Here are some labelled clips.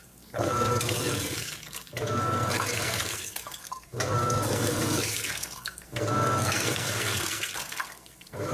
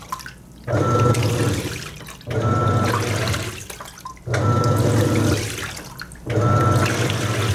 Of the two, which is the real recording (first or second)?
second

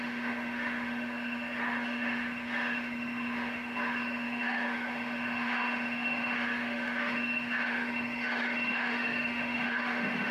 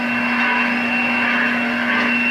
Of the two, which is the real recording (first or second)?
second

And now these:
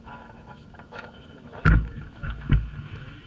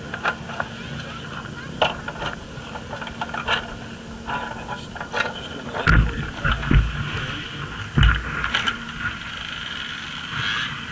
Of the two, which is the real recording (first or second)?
second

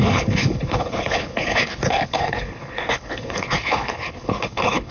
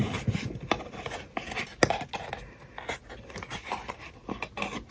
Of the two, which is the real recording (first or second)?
second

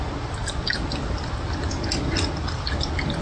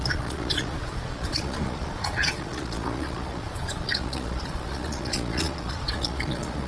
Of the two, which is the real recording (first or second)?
first